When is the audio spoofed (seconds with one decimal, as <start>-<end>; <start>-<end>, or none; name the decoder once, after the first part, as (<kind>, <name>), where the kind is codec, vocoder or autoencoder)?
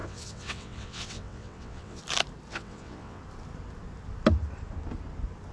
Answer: 0.0-2.0 (vocoder, WaveNeXt); 2.5-3.2